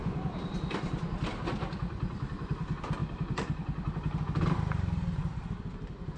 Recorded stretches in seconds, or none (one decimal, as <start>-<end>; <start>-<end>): 2.5-3.0; 4.2-6.2